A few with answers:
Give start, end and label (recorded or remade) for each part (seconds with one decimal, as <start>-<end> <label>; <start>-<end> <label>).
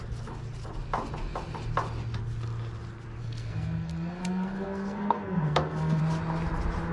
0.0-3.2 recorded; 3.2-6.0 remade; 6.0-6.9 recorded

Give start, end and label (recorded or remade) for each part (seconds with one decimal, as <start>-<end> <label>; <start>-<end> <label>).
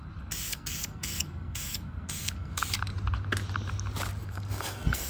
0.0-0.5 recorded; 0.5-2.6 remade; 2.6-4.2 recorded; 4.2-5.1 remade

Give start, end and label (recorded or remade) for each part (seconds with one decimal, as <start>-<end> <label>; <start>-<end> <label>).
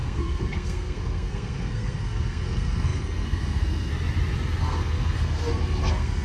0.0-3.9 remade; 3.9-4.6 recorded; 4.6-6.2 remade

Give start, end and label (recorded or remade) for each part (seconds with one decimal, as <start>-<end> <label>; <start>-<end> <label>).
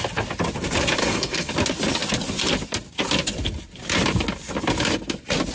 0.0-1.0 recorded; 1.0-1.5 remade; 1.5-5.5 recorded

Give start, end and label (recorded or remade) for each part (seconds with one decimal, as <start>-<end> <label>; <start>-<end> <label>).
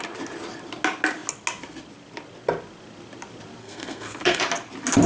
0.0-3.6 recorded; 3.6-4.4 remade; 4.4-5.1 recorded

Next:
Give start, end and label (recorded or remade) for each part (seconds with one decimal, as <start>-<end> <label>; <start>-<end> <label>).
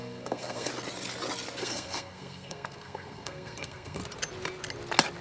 0.0-0.7 remade; 0.7-1.6 recorded; 1.6-4.0 remade; 4.0-5.2 recorded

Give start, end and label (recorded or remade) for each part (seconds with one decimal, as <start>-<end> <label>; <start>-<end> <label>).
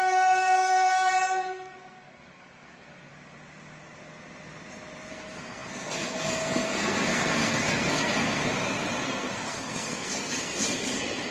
0.0-3.1 remade; 3.1-5.1 recorded; 5.1-8.5 remade; 8.5-9.0 recorded; 9.0-11.3 remade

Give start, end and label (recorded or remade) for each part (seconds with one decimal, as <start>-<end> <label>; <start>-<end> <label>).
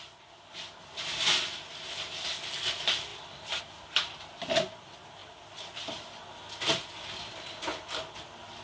0.0-8.6 recorded